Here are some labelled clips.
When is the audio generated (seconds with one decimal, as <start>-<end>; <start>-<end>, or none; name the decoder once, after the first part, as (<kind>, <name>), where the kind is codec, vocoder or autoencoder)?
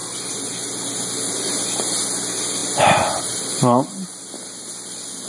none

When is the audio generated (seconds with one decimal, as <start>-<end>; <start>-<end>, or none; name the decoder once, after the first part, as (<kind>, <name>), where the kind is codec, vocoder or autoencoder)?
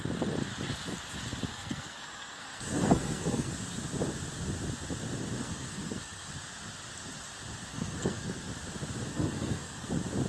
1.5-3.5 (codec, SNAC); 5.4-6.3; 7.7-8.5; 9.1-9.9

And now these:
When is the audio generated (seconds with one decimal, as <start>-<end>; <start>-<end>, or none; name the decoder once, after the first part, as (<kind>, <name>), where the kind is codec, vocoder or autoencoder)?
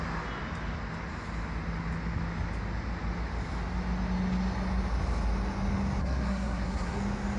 6.0-7.0 (codec, SNAC)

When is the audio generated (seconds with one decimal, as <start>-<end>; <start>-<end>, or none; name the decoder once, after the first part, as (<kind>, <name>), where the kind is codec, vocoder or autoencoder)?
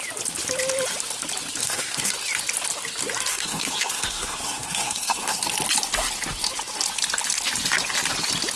1.6-2.1 (codec, SNAC); 3.3-5.4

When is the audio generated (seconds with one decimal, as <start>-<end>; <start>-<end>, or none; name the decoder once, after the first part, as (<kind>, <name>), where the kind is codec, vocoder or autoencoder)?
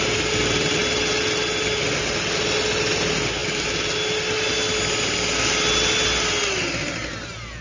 none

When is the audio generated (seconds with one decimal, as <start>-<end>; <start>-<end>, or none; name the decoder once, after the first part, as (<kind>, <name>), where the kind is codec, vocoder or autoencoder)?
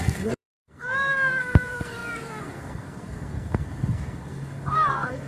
0.0-5.3 (codec, SNAC)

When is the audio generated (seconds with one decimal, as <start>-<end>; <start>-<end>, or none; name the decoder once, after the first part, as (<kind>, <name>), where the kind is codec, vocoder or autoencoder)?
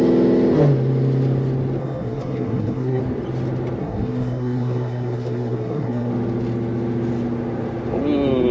1.8-3.0 (codec, SNAC); 3.8-6.1